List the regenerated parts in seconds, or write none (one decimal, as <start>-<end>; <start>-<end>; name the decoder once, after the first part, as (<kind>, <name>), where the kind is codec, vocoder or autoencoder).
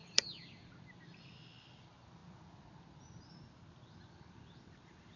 0.0-0.6 (vocoder, BigVGAN v2)